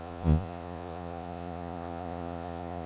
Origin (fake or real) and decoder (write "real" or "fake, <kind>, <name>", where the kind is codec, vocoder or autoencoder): fake, vocoder, Vocos